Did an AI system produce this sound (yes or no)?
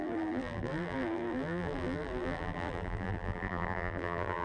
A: yes